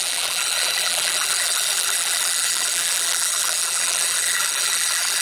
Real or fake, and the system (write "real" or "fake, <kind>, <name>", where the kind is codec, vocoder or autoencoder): fake, vocoder, BigVGAN v2